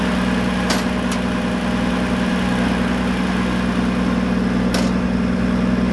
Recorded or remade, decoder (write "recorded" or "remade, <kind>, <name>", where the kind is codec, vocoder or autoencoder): recorded